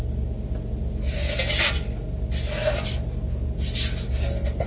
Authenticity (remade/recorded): recorded